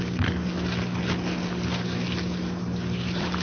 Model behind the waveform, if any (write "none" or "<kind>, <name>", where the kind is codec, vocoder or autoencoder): none